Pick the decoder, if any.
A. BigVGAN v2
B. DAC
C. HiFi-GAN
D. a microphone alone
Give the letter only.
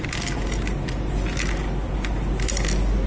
D